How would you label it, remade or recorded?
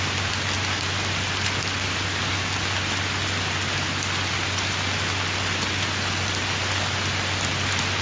recorded